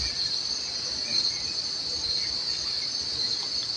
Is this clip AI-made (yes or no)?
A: no